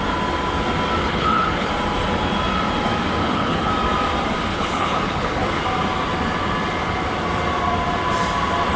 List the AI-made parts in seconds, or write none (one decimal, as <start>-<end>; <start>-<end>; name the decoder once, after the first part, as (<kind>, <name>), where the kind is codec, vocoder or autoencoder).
1.0-1.7 (codec, HILCodec); 3.2-3.7; 4.5-5.6